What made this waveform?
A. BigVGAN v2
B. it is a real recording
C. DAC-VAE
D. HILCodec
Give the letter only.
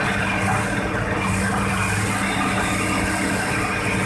B